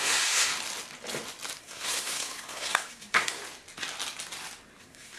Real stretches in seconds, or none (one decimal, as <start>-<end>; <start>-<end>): 0.5-1.6; 3.4-4.8